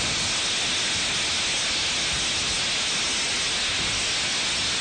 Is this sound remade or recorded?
recorded